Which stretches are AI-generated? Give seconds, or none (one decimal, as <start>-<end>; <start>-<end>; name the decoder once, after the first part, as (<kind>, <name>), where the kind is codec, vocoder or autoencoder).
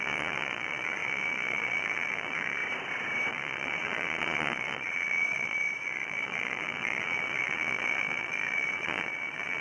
0.0-2.6 (vocoder, Vocos); 3.3-9.6